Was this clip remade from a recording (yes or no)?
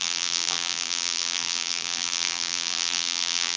yes